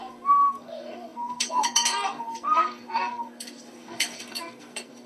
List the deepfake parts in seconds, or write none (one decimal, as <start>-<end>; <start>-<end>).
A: 0.0-5.1